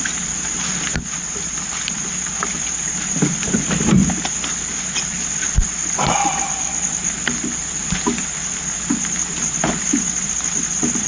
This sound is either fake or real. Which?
real